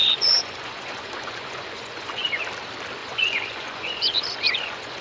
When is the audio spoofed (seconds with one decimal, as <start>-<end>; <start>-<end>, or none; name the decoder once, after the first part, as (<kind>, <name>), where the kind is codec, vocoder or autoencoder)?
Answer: 0.0-2.4 (vocoder, Vocos); 3.0-5.0